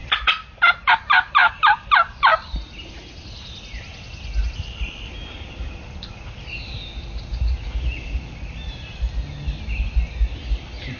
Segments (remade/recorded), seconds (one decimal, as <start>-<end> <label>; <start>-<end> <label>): 0.0-11.0 recorded